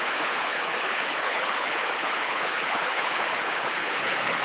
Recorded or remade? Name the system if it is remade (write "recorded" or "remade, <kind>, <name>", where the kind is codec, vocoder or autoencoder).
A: remade, codec, HILCodec